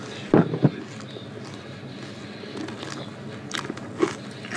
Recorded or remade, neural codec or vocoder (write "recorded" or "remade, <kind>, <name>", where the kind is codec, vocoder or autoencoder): recorded